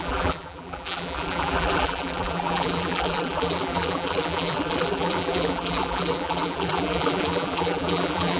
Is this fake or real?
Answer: fake